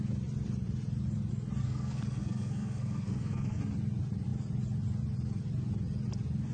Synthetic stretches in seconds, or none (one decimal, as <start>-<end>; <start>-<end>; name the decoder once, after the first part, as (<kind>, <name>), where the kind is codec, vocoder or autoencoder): 1.6-3.6 (codec, SNAC)